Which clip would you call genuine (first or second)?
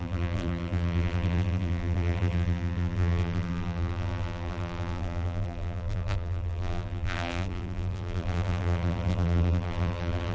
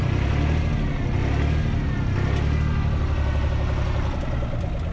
second